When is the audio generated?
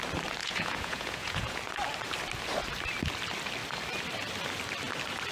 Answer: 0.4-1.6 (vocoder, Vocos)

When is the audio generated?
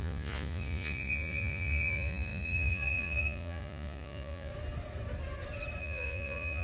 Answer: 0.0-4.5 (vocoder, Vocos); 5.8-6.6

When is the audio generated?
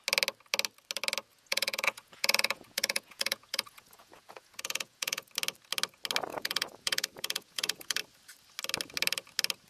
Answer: 1.3-5.3 (vocoder, Vocos); 6.3-8.0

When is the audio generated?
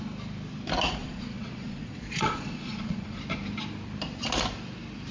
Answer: 1.0-3.2 (vocoder, Vocos)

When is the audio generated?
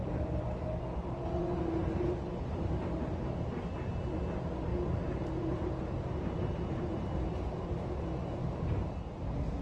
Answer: none